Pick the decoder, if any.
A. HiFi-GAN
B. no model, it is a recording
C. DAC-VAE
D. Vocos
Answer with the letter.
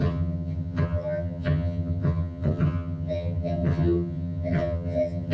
A